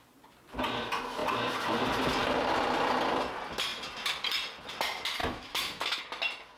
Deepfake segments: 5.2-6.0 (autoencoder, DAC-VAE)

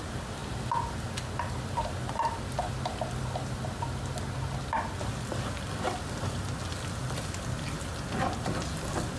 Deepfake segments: none

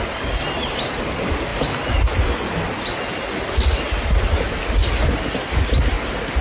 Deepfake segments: none

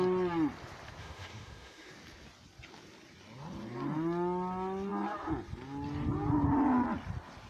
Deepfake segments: 1.0-1.9 (autoencoder, DAC-VAE)

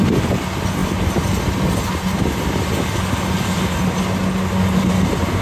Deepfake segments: none